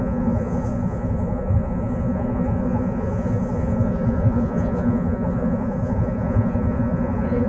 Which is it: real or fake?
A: fake